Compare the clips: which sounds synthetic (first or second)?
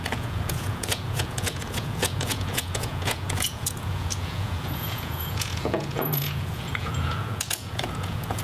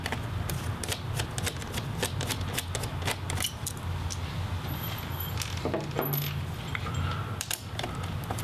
first